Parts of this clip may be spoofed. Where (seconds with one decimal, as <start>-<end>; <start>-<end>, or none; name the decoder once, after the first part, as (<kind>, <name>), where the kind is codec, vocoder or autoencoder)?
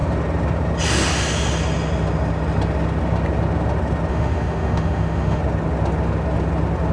4.1-5.4 (autoencoder, DAC-VAE)